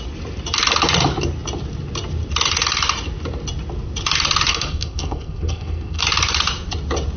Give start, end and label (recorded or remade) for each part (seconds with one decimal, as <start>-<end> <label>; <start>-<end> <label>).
0.0-4.5 recorded; 4.5-6.0 remade; 6.0-7.2 recorded